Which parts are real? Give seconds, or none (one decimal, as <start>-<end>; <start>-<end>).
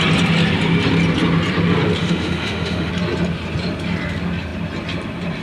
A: 0.0-2.0; 2.9-5.4